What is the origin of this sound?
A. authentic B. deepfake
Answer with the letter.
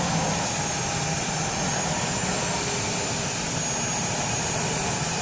A